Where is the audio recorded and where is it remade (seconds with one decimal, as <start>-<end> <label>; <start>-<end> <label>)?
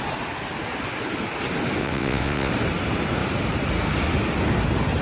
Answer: 0.0-1.8 recorded; 1.8-2.5 remade; 2.5-5.0 recorded